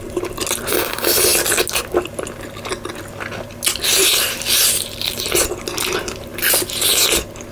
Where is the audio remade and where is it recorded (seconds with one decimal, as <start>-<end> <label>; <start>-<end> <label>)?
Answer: 0.0-7.5 recorded